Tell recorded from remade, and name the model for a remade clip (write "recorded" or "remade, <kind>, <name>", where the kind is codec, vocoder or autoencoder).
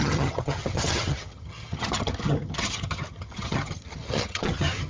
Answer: remade, vocoder, HiFi-GAN